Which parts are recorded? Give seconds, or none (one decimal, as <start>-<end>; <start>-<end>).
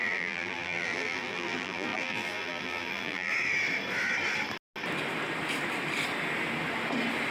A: 3.3-7.3